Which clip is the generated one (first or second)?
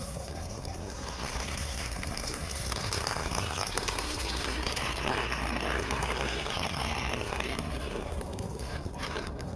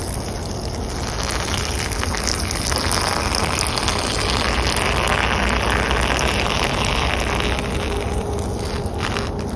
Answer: first